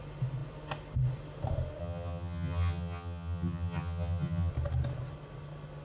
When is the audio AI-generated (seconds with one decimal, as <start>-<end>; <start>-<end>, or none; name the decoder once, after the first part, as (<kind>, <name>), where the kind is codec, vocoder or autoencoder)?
1.8-4.5 (vocoder, HiFi-GAN)